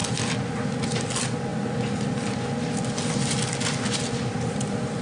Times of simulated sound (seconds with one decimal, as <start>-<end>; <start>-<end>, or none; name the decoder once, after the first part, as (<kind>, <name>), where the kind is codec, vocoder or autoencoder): none